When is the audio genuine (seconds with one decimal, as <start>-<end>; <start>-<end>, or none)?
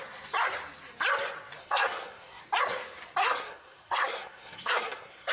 0.0-1.6; 2.4-3.2